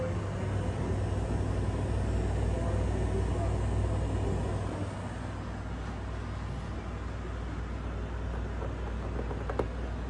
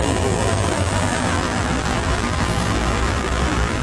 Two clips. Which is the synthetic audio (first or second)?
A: second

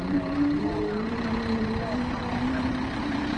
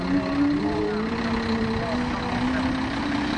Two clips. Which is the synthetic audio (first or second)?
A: first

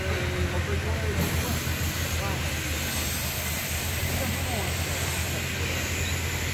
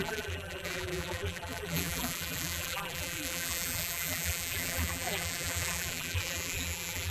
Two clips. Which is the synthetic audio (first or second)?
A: second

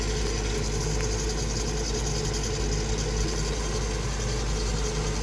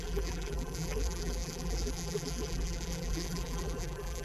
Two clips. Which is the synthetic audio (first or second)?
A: second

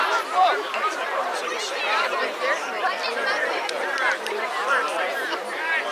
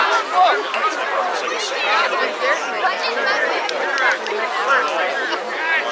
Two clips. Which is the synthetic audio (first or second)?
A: first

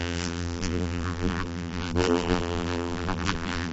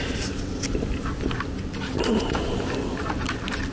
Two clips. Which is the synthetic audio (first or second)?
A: first